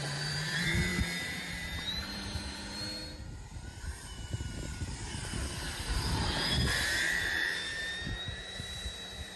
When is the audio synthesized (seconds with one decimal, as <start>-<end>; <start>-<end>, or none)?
0.0-9.4